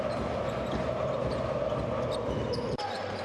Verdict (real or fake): real